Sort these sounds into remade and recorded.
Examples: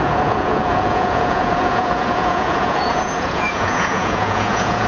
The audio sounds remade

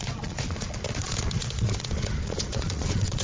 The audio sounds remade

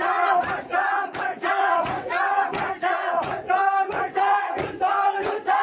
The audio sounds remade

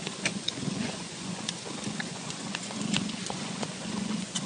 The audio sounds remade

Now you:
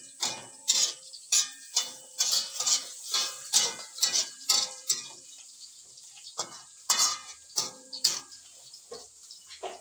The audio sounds remade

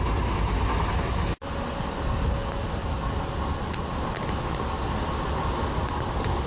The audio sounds recorded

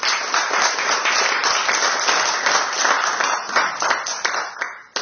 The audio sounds recorded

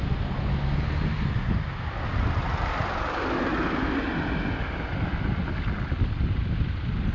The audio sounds recorded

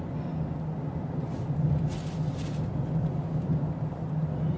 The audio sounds recorded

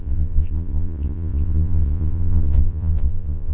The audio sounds remade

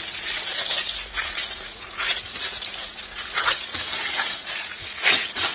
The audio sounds remade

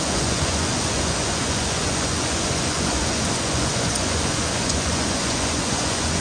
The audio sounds remade